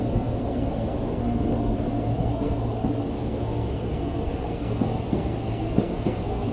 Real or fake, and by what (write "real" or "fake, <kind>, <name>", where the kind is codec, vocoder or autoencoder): fake, codec, SNAC